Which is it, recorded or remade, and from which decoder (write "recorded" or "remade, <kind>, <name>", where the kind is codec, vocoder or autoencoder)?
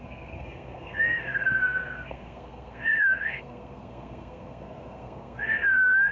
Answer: remade, codec, SNAC